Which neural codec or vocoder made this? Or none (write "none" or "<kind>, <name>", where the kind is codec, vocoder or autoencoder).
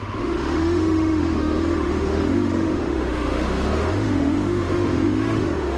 autoencoder, DAC-VAE